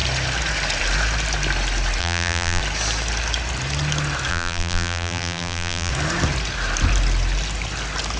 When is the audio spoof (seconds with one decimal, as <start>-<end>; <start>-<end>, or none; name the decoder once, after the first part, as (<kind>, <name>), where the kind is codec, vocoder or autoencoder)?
2.0-2.6 (vocoder, BigVGAN v2); 4.3-5.9